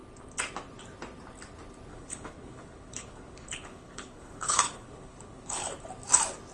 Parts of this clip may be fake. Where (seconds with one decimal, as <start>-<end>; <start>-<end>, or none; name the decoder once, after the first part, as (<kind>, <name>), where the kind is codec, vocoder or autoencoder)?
1.9-5.8 (codec, HILCodec)